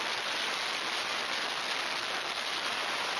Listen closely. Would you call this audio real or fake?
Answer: real